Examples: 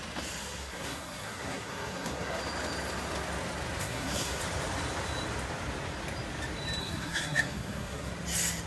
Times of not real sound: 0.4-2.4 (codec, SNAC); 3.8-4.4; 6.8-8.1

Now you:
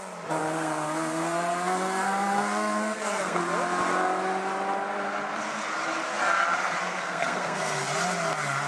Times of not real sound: 0.4-3.4 (codec, SNAC); 6.8-7.9

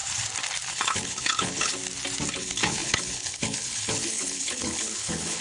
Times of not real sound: 0.7-1.8 (codec, HILCodec); 2.3-5.4

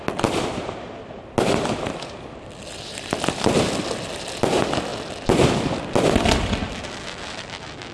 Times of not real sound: none

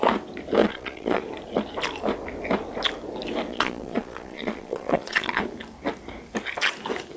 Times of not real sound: 0.6-1.2 (vocoder, Vocos); 3.5-5.4

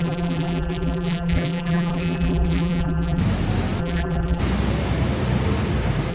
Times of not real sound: 0.0-3.2 (vocoder, BigVGAN v2); 3.8-4.4

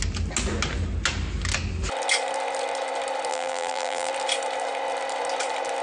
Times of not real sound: 3.3-4.1 (vocoder, BigVGAN v2)